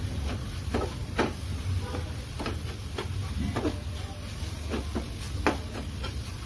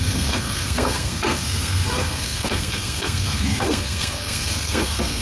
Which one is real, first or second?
first